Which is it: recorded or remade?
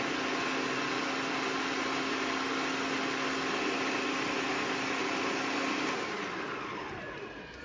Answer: recorded